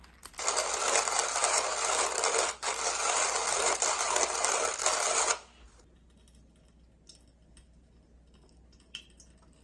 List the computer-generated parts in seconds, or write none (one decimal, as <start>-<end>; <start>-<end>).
none